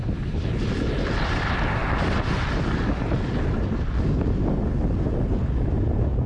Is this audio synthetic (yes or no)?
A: no